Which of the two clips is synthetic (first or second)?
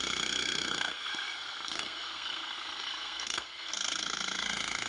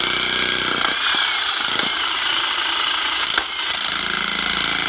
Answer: first